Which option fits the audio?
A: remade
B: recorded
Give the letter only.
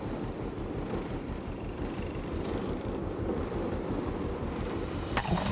B